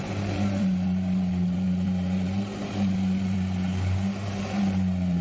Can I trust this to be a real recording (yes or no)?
no